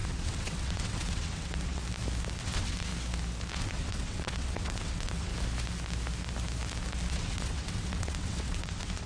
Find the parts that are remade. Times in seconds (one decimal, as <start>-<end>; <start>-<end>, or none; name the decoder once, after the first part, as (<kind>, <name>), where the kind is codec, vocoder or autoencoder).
0.0-1.8 (vocoder, WaveNeXt); 2.4-2.9; 3.5-5.3; 7.1-9.1